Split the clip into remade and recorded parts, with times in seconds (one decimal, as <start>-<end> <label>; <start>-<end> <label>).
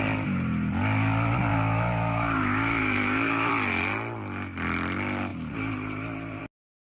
0.0-1.5 recorded; 1.5-3.5 remade; 3.5-6.9 recorded